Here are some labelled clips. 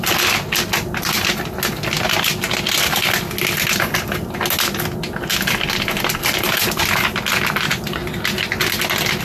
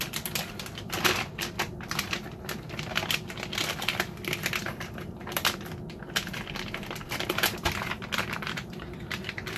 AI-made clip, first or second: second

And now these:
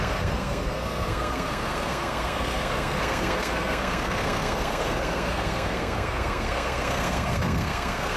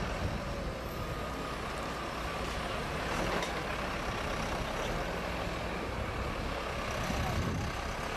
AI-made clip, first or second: first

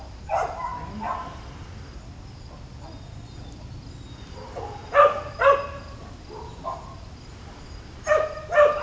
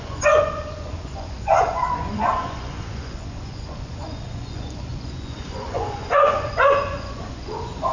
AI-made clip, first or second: second